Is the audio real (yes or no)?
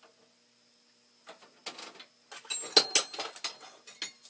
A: yes